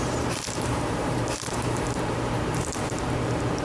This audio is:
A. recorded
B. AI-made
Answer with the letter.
B